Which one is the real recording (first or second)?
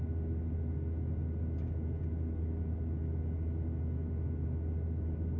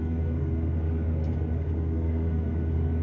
first